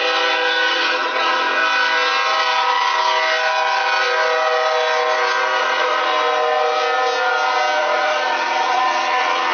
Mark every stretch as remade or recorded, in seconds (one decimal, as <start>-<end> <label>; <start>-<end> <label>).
0.0-0.7 recorded; 0.7-1.6 remade; 1.6-5.6 recorded; 5.6-6.1 remade; 6.1-7.8 recorded; 7.8-9.5 remade

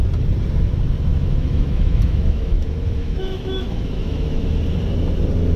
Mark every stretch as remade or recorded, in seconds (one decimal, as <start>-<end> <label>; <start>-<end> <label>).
0.0-1.1 recorded; 1.1-4.5 remade; 4.5-5.6 recorded